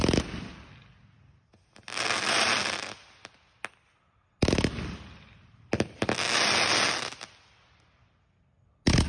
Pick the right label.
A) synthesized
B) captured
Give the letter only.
B